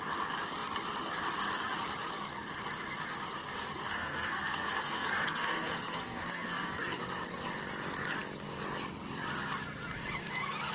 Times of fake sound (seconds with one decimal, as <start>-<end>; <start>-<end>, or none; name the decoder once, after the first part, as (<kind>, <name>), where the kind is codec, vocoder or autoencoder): 4.0-7.0 (codec, SNAC)